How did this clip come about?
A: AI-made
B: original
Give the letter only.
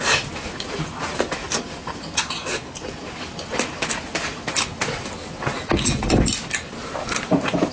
B